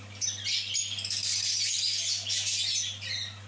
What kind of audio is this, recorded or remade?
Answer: recorded